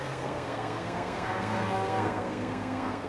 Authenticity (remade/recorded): remade